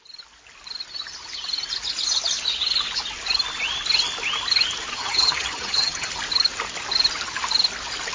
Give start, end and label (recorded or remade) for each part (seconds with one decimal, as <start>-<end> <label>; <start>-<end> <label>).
0.0-4.9 recorded; 4.9-6.1 remade; 6.1-8.1 recorded